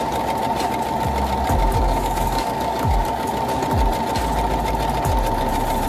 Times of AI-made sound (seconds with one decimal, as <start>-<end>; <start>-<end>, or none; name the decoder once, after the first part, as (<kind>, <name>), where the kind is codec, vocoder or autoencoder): 1.6-3.3 (codec, DAC)